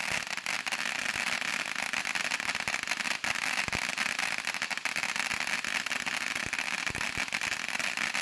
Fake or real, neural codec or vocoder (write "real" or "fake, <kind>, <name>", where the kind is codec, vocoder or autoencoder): real